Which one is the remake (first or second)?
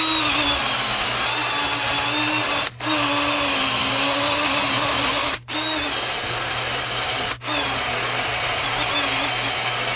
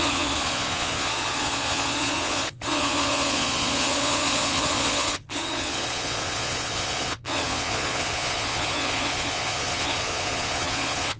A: second